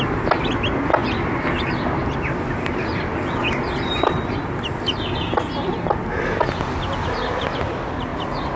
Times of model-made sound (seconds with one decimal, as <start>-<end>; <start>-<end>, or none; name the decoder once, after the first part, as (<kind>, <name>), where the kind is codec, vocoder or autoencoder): none